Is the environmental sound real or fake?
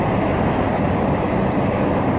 real